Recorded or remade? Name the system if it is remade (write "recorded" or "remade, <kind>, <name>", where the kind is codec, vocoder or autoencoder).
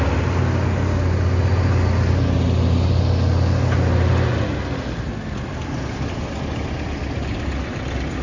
recorded